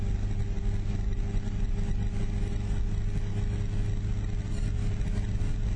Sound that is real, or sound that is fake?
real